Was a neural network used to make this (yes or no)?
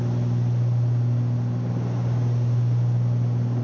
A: no